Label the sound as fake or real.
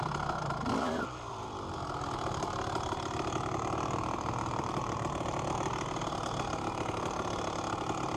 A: real